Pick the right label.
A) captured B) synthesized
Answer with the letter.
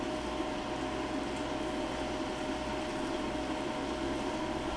A